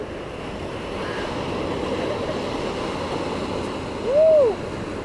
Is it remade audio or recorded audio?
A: recorded